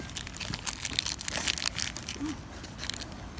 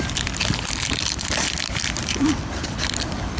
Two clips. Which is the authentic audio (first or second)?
first